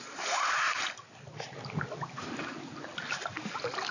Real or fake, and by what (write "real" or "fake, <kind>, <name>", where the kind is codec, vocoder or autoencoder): real